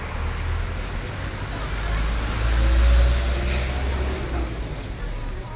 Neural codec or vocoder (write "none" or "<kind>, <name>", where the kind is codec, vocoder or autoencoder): none